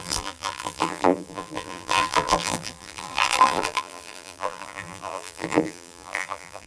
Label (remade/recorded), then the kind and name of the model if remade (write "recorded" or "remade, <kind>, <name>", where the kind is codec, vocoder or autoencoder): remade, vocoder, BigVGAN v2